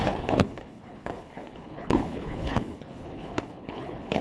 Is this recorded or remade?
remade